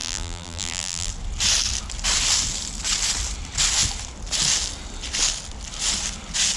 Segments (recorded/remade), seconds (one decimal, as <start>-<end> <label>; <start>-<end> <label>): 0.0-1.1 remade; 1.1-6.6 recorded